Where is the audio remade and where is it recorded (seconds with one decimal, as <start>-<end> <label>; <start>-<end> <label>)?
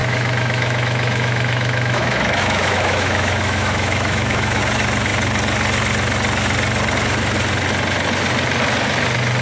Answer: 0.0-4.6 remade; 4.6-9.4 recorded